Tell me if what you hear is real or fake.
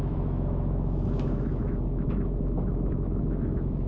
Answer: fake